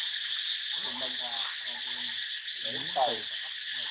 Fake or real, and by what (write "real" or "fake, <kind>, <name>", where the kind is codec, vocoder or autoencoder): real